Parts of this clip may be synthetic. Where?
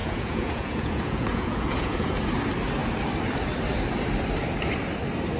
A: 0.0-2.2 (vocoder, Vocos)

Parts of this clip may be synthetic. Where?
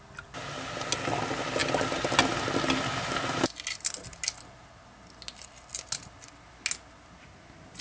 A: none